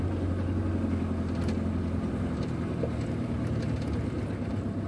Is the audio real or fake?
real